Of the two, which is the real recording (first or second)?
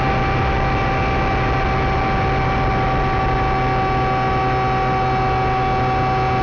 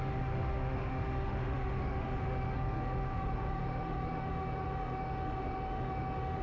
first